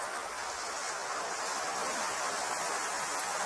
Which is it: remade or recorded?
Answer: recorded